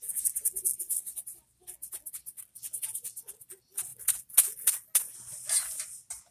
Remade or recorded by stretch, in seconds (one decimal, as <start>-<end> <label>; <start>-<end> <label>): 0.0-6.3 recorded